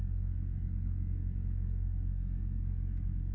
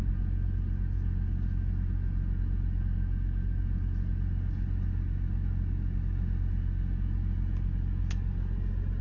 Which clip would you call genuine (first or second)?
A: second